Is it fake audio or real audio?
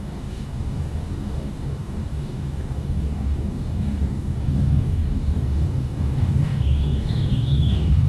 fake